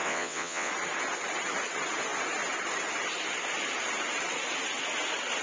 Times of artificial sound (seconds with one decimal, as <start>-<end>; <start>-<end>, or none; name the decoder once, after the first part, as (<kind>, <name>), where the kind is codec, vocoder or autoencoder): 0.0-0.7 (vocoder, WaveNeXt)